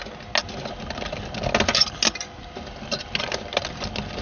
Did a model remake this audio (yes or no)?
no